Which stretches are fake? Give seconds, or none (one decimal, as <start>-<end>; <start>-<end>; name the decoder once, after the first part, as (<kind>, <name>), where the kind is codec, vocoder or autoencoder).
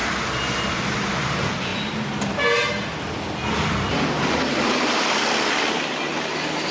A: none